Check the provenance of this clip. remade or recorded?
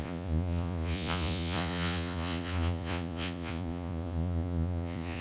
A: remade